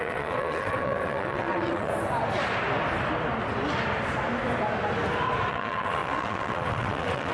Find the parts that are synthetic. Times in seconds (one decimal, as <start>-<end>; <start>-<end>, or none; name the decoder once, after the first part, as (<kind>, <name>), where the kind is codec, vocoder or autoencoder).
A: 0.0-1.9 (vocoder, WaveNeXt); 5.5-7.3